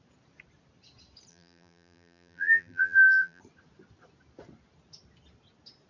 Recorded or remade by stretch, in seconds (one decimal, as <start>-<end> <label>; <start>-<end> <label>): 0.0-1.3 recorded; 1.3-3.4 remade; 3.4-5.9 recorded